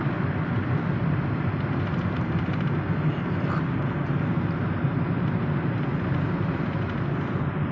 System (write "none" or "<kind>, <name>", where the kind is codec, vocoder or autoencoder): none